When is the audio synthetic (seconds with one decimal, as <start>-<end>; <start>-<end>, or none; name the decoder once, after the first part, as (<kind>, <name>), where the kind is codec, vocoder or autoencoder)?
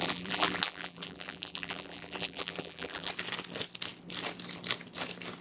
0.0-3.1 (vocoder, BigVGAN v2)